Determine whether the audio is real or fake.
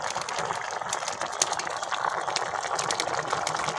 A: real